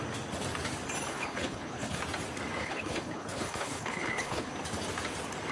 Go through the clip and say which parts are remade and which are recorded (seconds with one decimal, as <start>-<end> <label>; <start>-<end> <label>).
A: 0.0-1.1 recorded; 1.1-2.0 remade; 2.0-2.6 recorded; 2.6-4.5 remade; 4.5-5.5 recorded

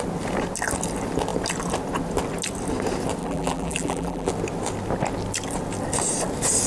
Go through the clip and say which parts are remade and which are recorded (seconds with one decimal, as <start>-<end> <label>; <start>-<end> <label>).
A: 0.0-3.2 recorded; 3.2-4.3 remade; 4.3-6.7 recorded

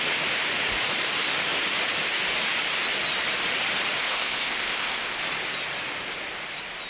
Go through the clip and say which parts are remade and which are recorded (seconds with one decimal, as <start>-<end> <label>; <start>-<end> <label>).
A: 0.0-4.0 recorded; 4.0-5.2 remade; 5.2-6.9 recorded

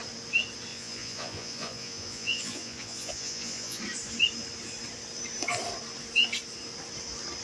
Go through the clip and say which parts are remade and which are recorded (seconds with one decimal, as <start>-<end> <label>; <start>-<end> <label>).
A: 0.0-0.7 recorded; 0.7-3.8 remade; 3.8-7.4 recorded